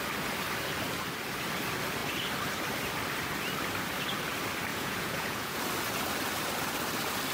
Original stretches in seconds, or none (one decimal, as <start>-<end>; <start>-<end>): 0.0-4.7; 5.6-7.3